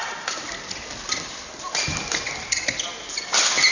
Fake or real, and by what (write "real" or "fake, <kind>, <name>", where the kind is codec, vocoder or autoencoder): real